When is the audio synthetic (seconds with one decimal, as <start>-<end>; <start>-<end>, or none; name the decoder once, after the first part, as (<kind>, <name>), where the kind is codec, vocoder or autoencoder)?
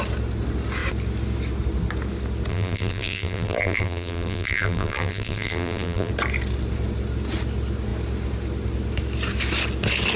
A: 2.5-6.1 (vocoder, BigVGAN v2)